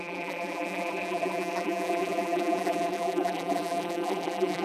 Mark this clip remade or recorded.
remade